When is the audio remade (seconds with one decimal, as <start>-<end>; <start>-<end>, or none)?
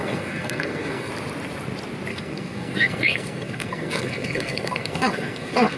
0.0-1.1; 2.1-5.8